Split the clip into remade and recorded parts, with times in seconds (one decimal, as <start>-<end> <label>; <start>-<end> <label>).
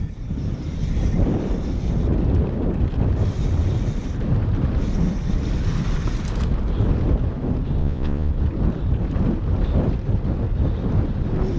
0.0-7.8 recorded; 7.8-8.3 remade; 8.3-11.6 recorded